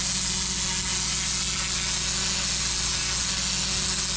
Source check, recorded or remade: recorded